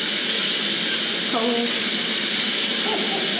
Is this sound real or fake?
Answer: real